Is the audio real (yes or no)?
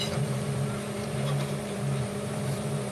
no